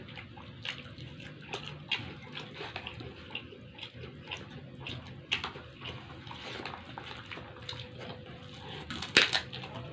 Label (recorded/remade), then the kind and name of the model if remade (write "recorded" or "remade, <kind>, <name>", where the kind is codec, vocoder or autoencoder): recorded